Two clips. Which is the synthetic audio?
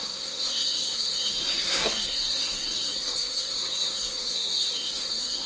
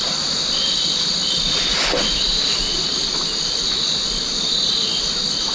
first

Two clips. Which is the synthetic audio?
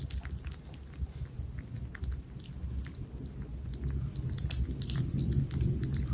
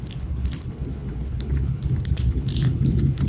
second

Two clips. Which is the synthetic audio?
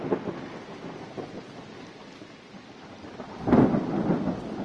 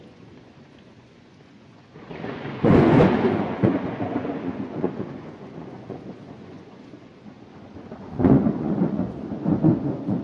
second